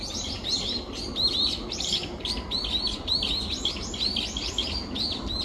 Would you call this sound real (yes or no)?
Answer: yes